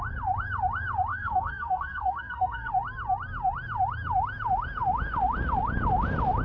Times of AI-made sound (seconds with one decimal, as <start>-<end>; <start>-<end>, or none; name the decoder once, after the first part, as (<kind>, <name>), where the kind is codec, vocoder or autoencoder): 1.1-2.7 (codec, SNAC)